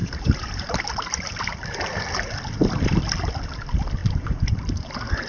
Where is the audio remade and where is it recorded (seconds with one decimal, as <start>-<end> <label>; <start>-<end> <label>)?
0.0-1.4 remade; 1.4-5.3 recorded